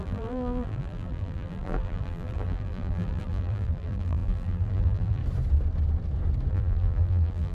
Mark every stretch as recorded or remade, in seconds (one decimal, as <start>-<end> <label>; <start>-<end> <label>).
0.0-5.2 remade; 5.2-6.5 recorded; 6.5-7.5 remade